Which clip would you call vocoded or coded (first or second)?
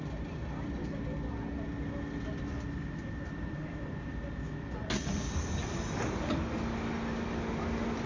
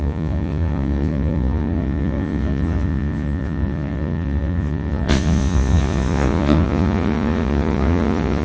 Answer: second